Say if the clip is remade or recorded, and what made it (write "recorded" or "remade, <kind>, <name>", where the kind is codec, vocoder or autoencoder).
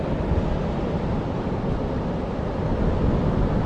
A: recorded